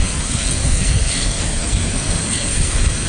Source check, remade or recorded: remade